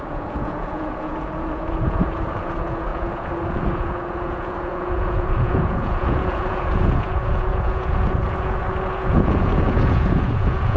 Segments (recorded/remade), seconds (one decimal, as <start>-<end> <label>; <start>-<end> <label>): 0.0-10.8 remade

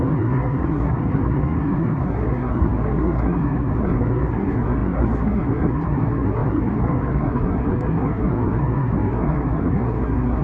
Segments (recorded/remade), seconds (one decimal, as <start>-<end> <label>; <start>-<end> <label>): 0.0-10.4 remade

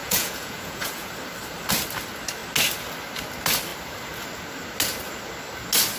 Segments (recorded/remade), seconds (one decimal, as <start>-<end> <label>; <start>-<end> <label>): 0.0-1.1 remade; 1.1-6.0 recorded

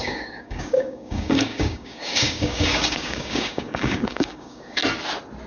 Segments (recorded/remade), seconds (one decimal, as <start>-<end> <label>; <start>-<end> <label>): 0.0-4.8 remade; 4.8-5.5 recorded